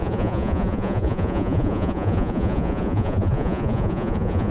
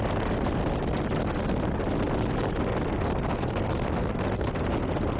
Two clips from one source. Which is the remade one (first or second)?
first